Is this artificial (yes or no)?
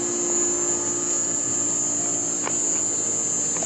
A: no